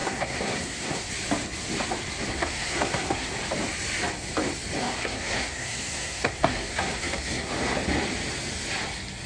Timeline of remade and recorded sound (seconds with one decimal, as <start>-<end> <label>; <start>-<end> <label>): 0.0-1.1 remade; 1.1-2.3 recorded; 2.3-3.3 remade; 3.3-4.8 recorded; 4.8-7.5 remade; 7.5-9.3 recorded